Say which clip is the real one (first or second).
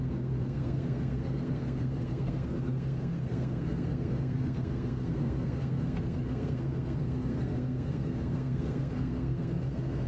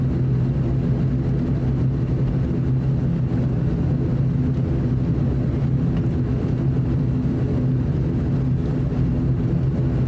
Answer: second